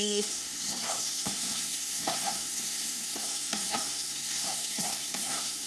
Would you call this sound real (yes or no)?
no